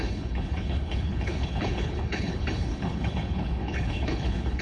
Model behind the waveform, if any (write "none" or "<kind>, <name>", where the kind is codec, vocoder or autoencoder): codec, HILCodec